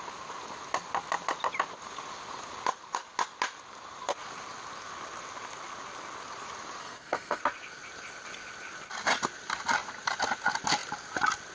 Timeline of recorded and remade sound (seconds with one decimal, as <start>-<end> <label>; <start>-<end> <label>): 0.0-6.8 recorded; 6.8-7.4 remade; 7.4-11.5 recorded